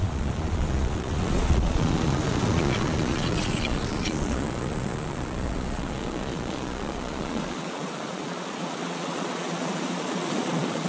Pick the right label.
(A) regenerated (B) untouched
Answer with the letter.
A